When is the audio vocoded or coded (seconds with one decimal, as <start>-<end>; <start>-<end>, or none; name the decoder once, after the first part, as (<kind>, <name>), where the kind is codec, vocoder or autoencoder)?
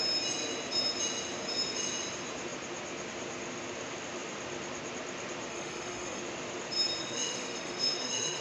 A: 5.5-6.2 (autoencoder, DAC-VAE); 7.0-8.4